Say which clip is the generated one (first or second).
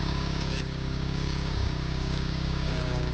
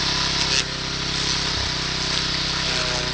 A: first